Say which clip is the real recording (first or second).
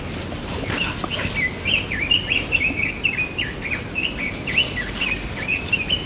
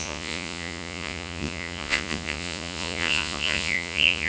first